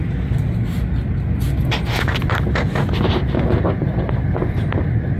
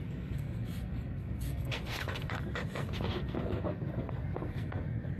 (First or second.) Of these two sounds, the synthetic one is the second